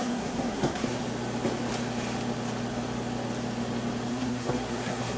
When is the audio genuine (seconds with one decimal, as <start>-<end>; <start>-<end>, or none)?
1.0-4.1